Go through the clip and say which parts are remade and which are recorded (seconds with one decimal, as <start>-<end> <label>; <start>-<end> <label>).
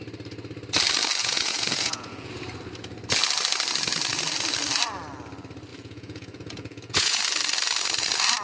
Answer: 0.0-1.2 recorded; 1.2-2.3 remade; 2.3-5.7 recorded; 5.7-7.2 remade; 7.2-8.4 recorded